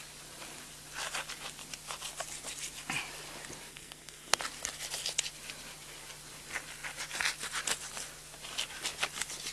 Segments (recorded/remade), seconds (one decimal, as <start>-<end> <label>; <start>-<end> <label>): 0.0-3.7 recorded; 3.7-4.4 remade; 4.4-9.5 recorded

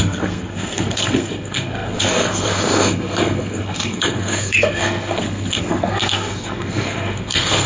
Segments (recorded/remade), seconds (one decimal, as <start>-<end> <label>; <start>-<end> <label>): 0.0-7.7 remade

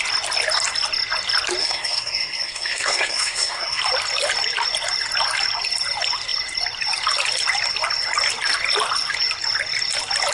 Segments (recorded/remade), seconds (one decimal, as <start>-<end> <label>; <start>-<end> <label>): 0.0-1.6 recorded; 1.6-3.8 remade; 3.8-10.3 recorded

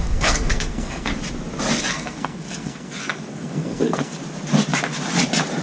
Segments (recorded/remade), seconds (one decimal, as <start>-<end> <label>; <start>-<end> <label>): 0.0-1.1 remade; 1.1-1.9 recorded; 1.9-4.2 remade; 4.2-5.6 recorded

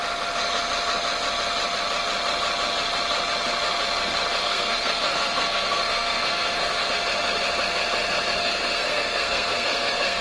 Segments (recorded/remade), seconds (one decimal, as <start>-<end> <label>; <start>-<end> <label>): 0.0-4.4 recorded; 4.4-6.9 remade; 6.9-8.4 recorded; 8.4-10.2 remade

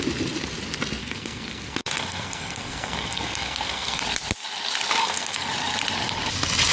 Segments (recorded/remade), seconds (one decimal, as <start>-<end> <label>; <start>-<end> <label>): 0.0-1.0 recorded; 1.0-4.0 remade; 4.0-5.0 recorded; 5.0-5.5 remade; 5.5-6.7 recorded

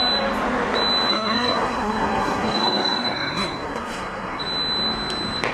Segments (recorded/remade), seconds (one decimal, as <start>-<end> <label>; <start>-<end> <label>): 0.0-1.1 recorded; 1.1-4.4 remade; 4.4-5.5 recorded